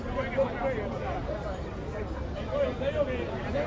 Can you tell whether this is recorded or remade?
recorded